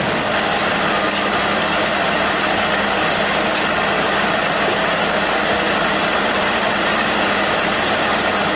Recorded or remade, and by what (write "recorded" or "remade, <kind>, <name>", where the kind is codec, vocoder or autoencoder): recorded